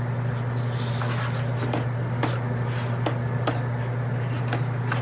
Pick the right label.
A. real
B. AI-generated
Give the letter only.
A